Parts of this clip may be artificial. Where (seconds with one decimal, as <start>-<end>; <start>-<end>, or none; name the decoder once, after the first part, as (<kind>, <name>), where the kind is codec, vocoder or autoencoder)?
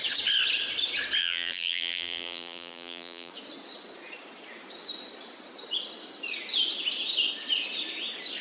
1.2-3.3 (vocoder, BigVGAN v2)